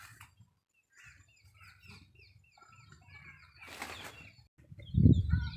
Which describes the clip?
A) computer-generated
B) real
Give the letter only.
B